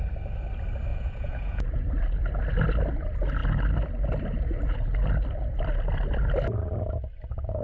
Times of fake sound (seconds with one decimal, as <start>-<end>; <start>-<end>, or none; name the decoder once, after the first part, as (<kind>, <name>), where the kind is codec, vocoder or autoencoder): 0.9-1.8 (vocoder, Vocos)